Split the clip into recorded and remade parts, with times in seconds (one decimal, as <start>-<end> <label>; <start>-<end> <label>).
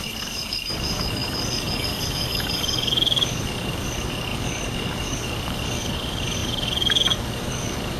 0.0-8.0 remade